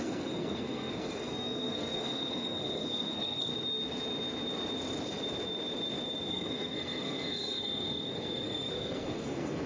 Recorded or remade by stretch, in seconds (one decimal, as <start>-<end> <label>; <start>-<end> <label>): 0.0-3.5 remade; 3.5-6.3 recorded; 6.3-9.7 remade